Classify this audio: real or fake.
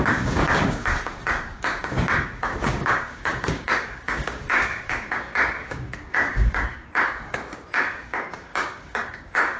fake